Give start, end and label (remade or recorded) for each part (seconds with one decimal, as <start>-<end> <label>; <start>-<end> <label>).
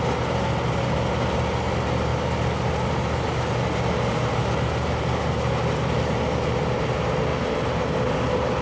0.0-8.6 recorded